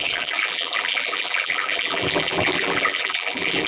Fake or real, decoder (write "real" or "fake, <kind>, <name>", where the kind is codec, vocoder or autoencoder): fake, vocoder, BigVGAN v2